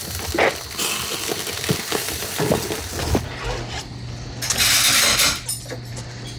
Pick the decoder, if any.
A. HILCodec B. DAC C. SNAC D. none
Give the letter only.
D